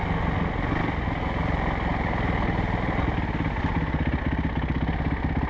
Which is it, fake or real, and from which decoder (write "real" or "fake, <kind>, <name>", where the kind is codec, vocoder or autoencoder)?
real